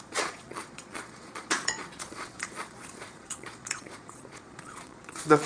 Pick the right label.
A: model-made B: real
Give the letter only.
A